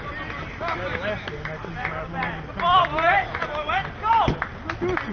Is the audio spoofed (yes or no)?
no